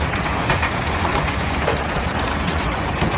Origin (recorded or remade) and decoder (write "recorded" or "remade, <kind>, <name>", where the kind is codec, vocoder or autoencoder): remade, vocoder, Vocos